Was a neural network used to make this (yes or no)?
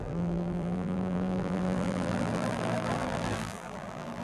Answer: yes